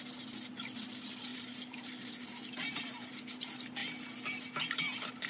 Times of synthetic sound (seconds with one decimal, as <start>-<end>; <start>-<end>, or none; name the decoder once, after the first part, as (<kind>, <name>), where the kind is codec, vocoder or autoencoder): 1.3-3.1 (vocoder, BigVGAN v2)